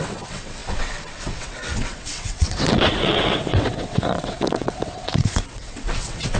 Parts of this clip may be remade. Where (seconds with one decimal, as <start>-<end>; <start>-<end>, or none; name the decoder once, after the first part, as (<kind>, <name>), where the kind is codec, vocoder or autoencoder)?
0.0-6.4 (vocoder, WaveNeXt)